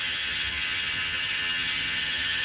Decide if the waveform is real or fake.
fake